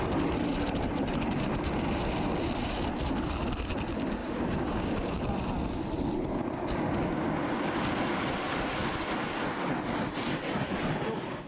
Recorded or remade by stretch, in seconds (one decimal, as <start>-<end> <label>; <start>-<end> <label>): 0.0-4.2 recorded; 4.2-5.2 remade; 5.2-11.5 recorded